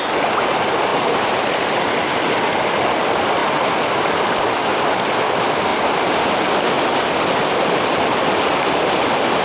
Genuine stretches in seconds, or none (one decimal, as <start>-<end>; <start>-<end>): 0.0-3.4; 4.3-5.7; 8.2-9.4